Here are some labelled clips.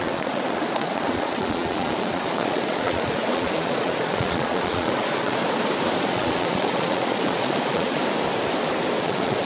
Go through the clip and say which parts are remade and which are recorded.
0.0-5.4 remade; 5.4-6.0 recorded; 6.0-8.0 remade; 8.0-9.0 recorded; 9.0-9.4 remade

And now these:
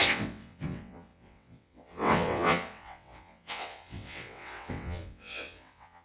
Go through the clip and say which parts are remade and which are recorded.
0.0-6.0 remade

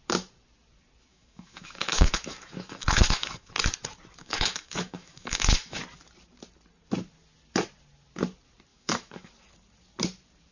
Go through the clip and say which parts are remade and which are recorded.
0.0-1.1 recorded; 1.1-3.5 remade; 3.5-4.2 recorded; 4.2-5.8 remade; 5.8-8.7 recorded; 8.7-9.3 remade; 9.3-10.5 recorded